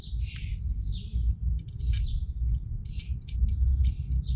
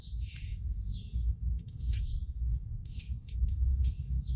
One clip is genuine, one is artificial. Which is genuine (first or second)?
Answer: first